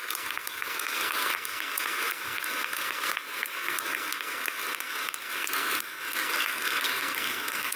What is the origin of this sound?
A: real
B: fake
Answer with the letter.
B